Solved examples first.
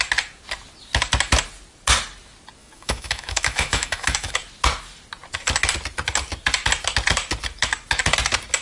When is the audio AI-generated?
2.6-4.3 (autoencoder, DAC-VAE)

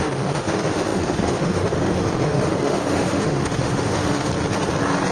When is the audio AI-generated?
0.0-4.3 (autoencoder, DAC-VAE)

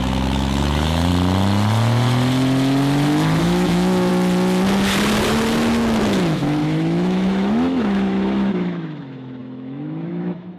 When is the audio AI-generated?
0.0-1.1 (autoencoder, DAC-VAE); 3.4-4.1; 6.0-10.6

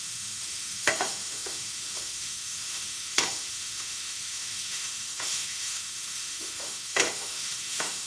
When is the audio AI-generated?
0.0-8.1 (autoencoder, DAC-VAE)

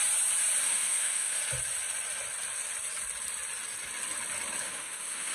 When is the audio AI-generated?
0.6-1.4 (autoencoder, DAC-VAE); 4.6-5.3

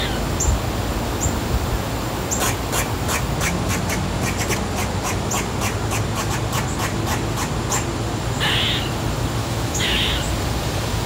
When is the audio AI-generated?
9.4-10.1 (autoencoder, DAC-VAE)